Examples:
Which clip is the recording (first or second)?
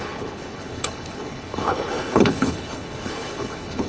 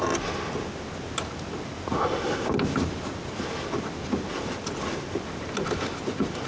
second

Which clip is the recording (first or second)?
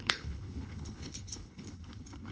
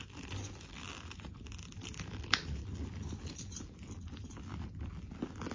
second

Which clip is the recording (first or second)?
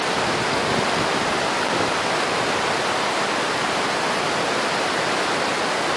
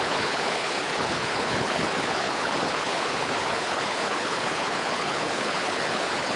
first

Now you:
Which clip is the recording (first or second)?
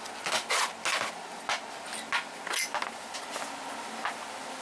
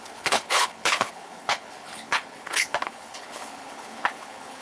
first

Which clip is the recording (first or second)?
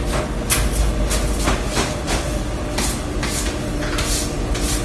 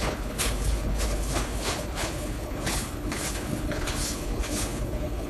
first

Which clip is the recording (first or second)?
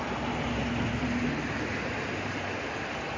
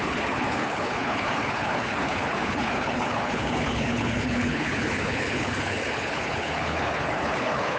first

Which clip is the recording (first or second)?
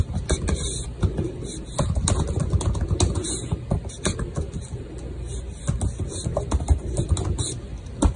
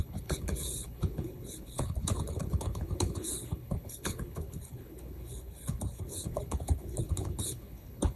first